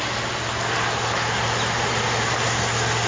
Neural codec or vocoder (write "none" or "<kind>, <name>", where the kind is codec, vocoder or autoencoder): none